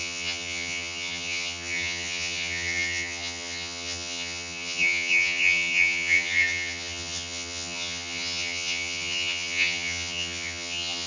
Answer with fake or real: fake